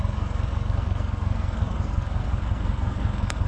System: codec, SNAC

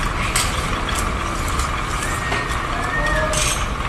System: none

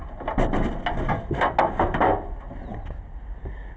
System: none